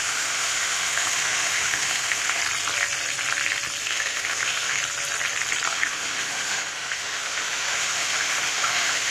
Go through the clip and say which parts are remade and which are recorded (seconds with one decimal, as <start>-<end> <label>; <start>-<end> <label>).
0.0-2.4 remade; 2.4-3.8 recorded; 3.8-4.8 remade; 4.8-5.7 recorded; 5.7-9.1 remade